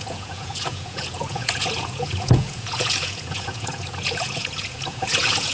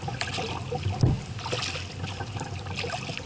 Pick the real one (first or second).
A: second